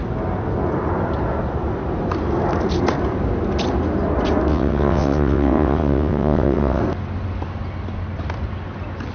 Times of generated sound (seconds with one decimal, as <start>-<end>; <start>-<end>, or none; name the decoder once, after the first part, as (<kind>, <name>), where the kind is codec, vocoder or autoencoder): 4.5-6.8 (vocoder, WaveNeXt)